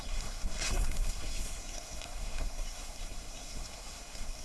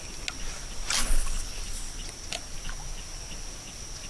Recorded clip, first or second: second